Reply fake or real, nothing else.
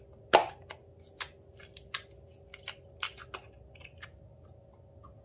real